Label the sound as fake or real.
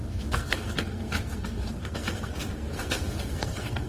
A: fake